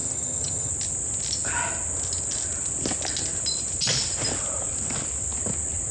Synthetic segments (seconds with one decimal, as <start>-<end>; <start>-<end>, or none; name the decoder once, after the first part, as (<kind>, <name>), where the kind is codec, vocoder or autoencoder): 0.0-0.7 (vocoder, HiFi-GAN)